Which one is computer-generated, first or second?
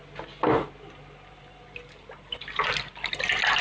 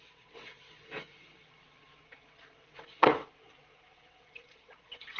second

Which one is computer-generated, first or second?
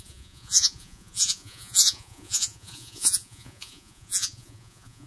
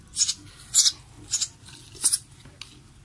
first